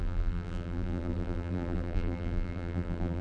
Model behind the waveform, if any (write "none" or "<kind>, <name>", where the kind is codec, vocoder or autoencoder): vocoder, BigVGAN v2